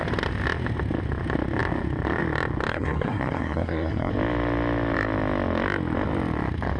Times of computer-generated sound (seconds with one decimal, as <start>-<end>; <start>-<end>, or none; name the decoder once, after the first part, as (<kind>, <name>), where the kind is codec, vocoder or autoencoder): 2.7-4.1 (codec, SNAC)